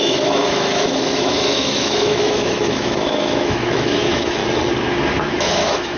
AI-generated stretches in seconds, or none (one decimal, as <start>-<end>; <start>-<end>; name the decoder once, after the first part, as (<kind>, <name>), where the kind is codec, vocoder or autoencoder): 0.0-4.4 (autoencoder, DAC-VAE); 5.2-6.0